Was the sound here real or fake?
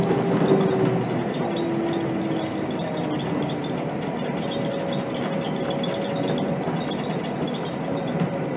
real